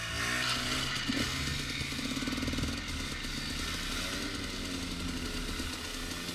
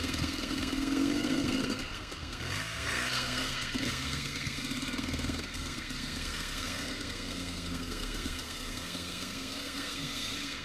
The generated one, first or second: second